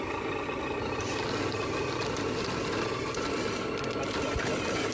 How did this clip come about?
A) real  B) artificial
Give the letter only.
A